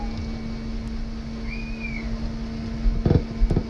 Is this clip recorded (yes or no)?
yes